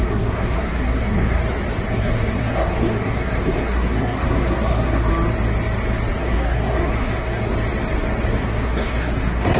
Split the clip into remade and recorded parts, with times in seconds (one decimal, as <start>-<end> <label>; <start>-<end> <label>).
0.0-1.4 remade; 1.4-1.9 recorded; 1.9-5.1 remade; 5.1-6.2 recorded; 6.2-7.5 remade; 7.5-8.4 recorded; 8.4-9.6 remade